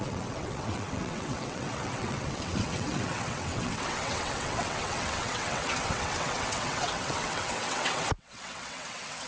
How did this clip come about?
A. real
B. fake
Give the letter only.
B